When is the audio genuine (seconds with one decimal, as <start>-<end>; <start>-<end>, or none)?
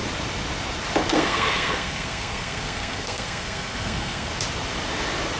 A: 0.0-1.1; 4.3-5.4